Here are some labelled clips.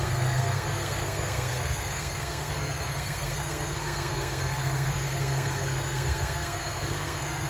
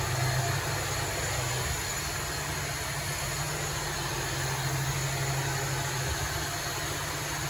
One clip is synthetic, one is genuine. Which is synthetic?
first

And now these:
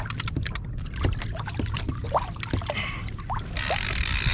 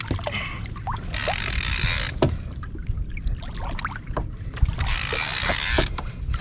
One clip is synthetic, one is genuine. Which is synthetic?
first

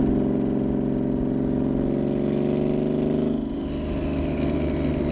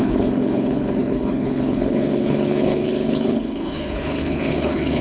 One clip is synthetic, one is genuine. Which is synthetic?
second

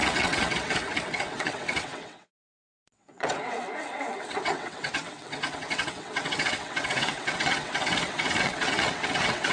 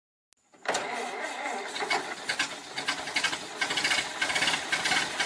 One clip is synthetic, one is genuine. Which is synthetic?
first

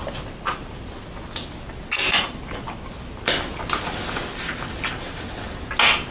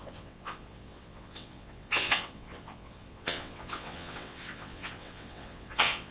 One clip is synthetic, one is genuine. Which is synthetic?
second